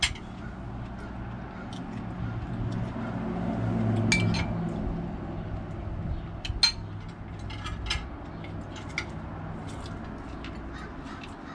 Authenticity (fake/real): real